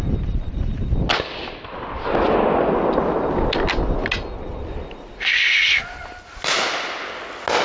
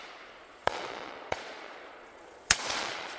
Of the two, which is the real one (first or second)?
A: first